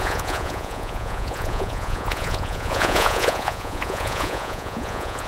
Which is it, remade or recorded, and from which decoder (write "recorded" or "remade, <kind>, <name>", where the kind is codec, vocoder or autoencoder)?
remade, vocoder, Vocos